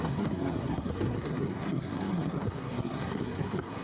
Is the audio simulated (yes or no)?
yes